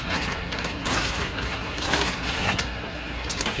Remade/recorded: remade